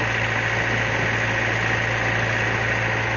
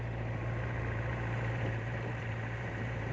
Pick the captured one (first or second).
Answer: first